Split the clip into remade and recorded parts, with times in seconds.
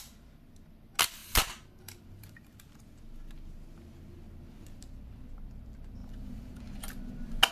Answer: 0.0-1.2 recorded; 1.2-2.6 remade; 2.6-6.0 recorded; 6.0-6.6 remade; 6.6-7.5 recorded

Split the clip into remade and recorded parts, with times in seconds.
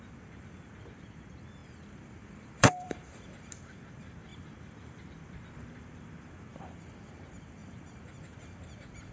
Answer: 0.0-1.6 recorded; 1.6-3.5 remade; 3.5-6.5 recorded; 6.5-7.1 remade; 7.1-9.1 recorded